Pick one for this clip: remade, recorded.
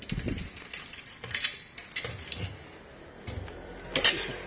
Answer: recorded